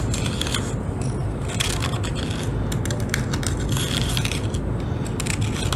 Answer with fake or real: real